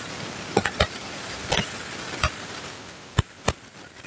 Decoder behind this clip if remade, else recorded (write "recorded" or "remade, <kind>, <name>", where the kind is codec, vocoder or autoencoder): recorded